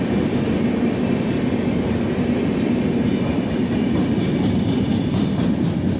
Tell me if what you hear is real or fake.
fake